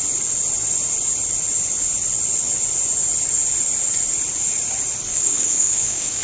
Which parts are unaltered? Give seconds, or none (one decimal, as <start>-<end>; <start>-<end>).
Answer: 0.0-5.1